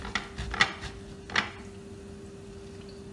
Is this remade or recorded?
recorded